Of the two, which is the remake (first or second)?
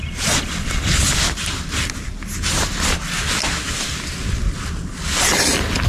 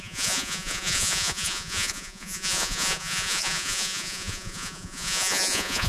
second